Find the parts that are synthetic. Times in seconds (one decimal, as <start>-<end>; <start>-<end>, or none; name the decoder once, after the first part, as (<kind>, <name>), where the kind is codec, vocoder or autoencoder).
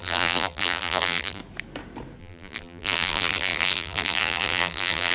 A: 0.0-1.4 (vocoder, BigVGAN v2); 2.2-5.1